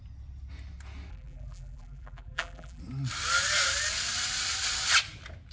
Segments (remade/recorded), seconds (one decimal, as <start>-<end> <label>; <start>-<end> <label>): 0.0-1.1 recorded; 1.1-2.8 remade; 2.8-5.5 recorded